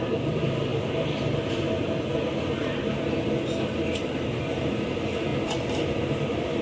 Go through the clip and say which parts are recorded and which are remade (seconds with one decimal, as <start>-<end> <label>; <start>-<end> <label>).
0.0-6.6 recorded